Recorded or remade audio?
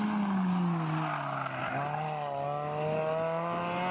recorded